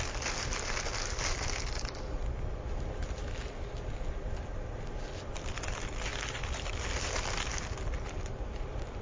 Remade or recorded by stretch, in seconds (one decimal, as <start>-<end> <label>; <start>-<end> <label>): 0.0-9.0 recorded